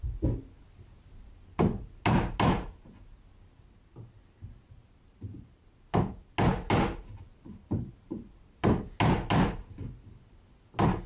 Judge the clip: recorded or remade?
recorded